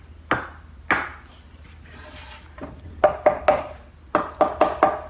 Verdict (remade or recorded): recorded